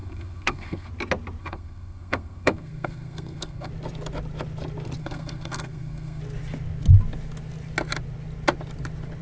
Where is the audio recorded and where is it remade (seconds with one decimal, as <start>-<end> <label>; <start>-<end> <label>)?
0.0-0.9 remade; 0.9-1.4 recorded; 1.4-3.7 remade; 3.7-5.0 recorded; 5.0-6.2 remade; 6.2-9.2 recorded